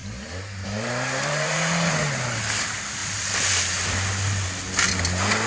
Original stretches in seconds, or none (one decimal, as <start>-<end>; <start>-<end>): 2.4-3.0; 3.5-5.5